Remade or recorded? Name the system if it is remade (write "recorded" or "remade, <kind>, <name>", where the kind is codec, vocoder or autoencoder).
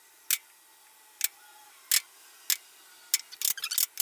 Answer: recorded